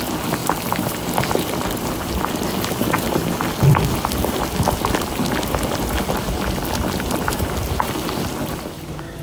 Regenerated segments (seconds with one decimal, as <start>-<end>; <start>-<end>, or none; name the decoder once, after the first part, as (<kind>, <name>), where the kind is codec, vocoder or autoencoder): none